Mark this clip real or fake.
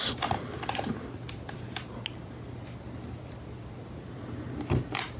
real